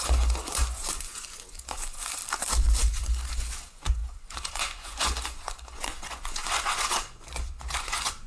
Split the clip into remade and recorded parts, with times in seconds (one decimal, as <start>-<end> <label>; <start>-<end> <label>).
0.0-2.2 remade; 2.2-2.9 recorded; 2.9-8.3 remade